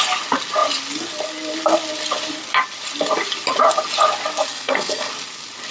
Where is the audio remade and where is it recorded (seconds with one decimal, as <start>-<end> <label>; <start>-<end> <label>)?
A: 0.0-4.5 recorded; 4.5-5.1 remade; 5.1-5.7 recorded